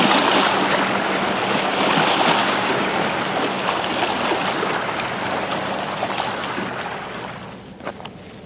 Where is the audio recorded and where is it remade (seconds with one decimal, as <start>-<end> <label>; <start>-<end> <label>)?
0.0-2.4 recorded; 2.4-2.9 remade; 2.9-8.5 recorded